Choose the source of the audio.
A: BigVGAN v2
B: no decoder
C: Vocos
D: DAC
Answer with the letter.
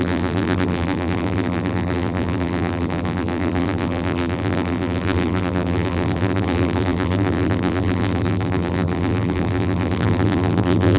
A